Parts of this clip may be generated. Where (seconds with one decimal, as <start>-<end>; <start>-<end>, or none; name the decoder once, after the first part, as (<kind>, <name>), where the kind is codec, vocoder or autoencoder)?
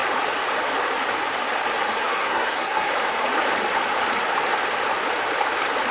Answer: 2.0-2.9 (codec, SNAC)